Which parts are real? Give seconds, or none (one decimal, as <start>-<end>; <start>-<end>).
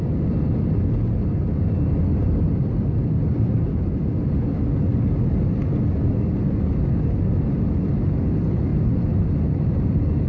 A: 0.0-2.1; 4.0-8.7; 9.6-10.3